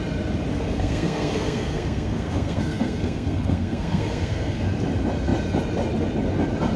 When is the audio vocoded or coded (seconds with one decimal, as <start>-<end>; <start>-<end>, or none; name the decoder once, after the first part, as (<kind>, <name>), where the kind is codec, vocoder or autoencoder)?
0.5-4.6 (codec, SNAC)